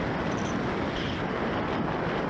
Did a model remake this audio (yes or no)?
no